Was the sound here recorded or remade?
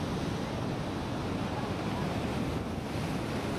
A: recorded